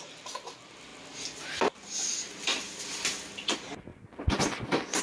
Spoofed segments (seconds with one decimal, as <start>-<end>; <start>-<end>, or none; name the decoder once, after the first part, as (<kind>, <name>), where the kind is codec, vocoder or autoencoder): 0.0-0.9 (vocoder, BigVGAN v2); 2.3-5.0